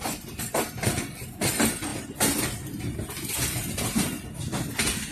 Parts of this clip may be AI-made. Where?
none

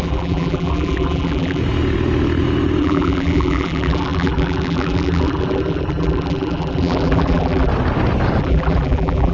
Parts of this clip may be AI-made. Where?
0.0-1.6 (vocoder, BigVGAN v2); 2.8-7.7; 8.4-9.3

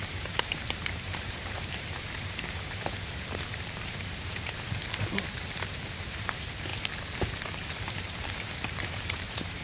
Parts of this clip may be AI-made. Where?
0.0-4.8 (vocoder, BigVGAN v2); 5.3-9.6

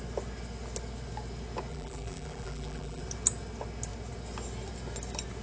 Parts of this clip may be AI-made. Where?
1.7-3.0 (vocoder, BigVGAN v2)

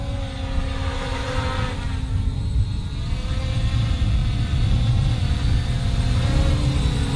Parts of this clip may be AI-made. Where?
none

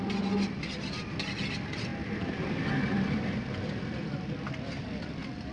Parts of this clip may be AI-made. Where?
none